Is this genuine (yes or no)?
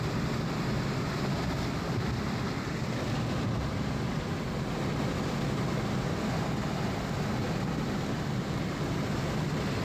yes